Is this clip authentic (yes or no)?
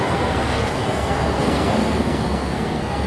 no